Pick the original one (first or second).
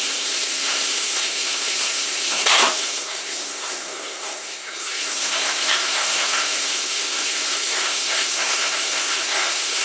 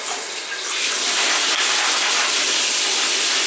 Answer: second